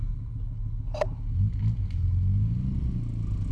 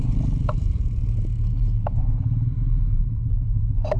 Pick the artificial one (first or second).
second